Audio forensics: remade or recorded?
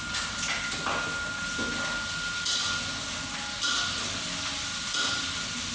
recorded